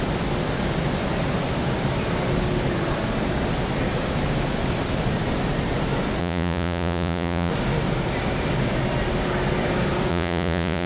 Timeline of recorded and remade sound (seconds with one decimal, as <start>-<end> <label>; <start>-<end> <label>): 0.0-6.2 recorded; 6.2-7.5 remade; 7.5-10.1 recorded; 10.1-10.9 remade